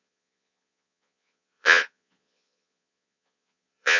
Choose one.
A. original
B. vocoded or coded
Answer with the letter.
B